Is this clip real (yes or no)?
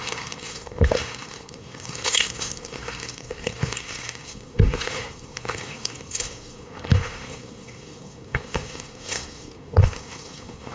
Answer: no